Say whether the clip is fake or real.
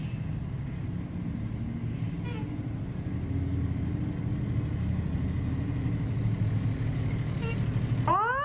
real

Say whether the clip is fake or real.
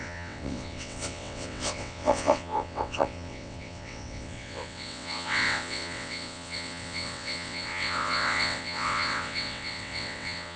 fake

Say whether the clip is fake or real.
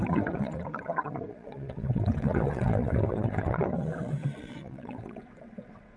fake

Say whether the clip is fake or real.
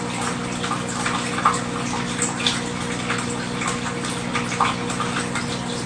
real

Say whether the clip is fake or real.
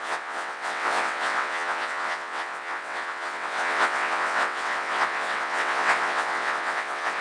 fake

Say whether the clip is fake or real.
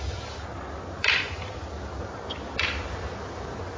real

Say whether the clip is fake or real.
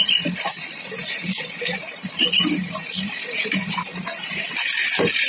real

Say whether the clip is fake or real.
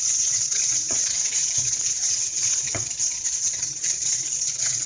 fake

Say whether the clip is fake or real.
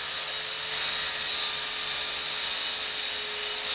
real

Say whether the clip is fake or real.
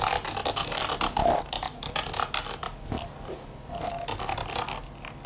real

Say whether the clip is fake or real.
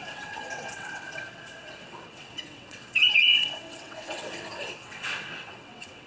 fake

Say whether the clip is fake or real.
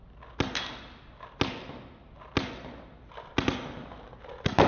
real